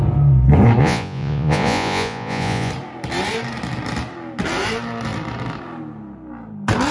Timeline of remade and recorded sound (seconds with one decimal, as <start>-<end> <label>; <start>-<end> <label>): 0.0-0.8 recorded; 0.8-2.7 remade; 2.7-6.9 recorded